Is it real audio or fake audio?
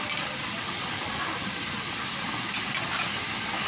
real